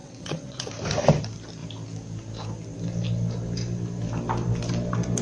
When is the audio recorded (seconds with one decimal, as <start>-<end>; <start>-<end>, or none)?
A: 0.7-5.2